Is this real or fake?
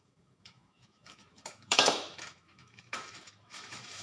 fake